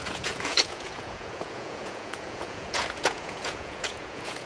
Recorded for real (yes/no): no